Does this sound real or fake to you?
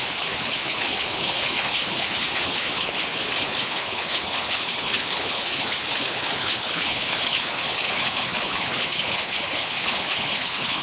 fake